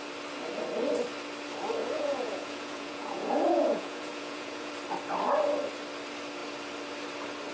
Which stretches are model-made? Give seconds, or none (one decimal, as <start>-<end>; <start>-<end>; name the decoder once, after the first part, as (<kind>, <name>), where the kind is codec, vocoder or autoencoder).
1.8-4.7 (vocoder, Vocos)